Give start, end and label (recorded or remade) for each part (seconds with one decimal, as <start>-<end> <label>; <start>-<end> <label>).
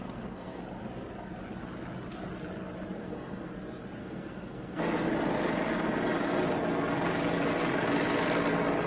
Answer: 0.0-0.6 remade; 0.6-3.0 recorded; 3.0-3.5 remade; 3.5-4.0 recorded; 4.0-5.1 remade; 5.1-8.9 recorded